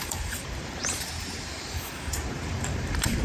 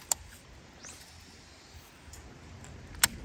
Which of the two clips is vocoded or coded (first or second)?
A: first